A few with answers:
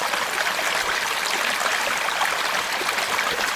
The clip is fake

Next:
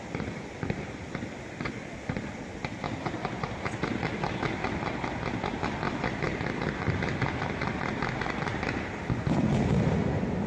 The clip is real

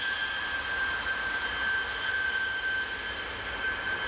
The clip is real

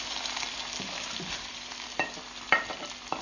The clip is fake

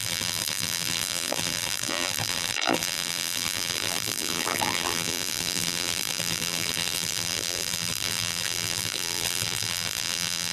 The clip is fake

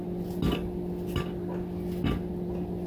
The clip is real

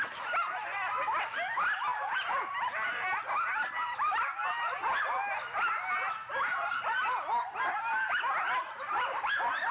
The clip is real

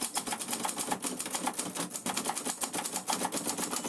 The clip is real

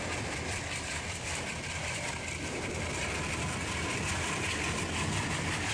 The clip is fake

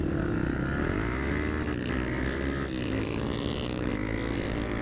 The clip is real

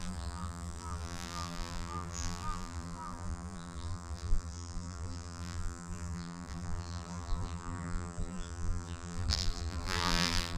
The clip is fake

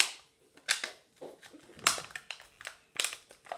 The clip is real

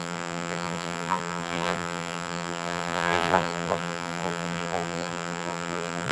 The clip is fake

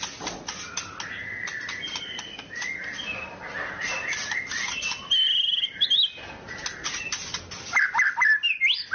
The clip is real